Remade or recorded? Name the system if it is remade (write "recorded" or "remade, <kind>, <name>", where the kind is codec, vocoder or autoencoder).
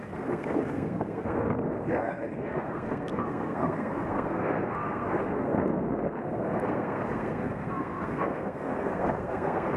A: remade, codec, SNAC